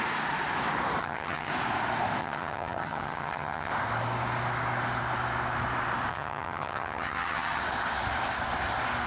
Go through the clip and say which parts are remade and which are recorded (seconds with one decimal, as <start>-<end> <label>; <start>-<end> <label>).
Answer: 0.0-1.0 recorded; 1.0-1.5 remade; 1.5-2.2 recorded; 2.2-3.7 remade; 3.7-6.1 recorded; 6.1-7.6 remade; 7.6-9.1 recorded